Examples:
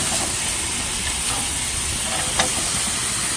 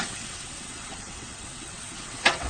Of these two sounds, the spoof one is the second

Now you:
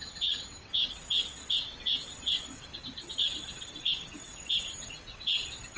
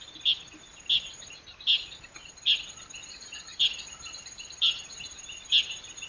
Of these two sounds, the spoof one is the first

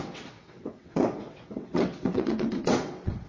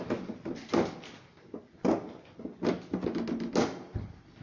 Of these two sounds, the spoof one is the first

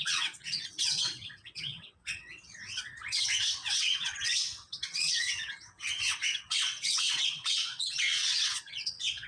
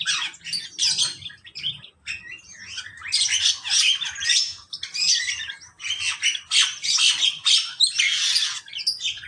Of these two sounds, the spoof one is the first